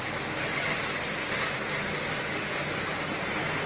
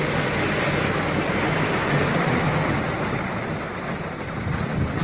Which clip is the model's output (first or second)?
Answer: second